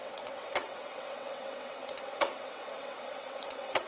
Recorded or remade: remade